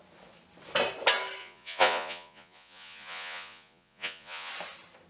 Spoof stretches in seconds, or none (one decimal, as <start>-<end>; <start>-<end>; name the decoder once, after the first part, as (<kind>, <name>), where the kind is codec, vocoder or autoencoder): 1.4-4.5 (vocoder, Vocos)